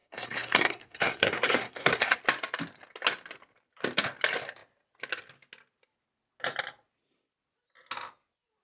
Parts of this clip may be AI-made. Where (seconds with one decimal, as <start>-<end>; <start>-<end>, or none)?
0.0-2.2